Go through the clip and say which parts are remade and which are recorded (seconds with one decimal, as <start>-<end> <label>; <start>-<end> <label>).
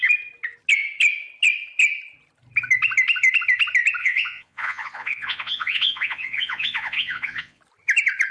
0.0-4.0 recorded; 4.0-7.6 remade; 7.6-8.3 recorded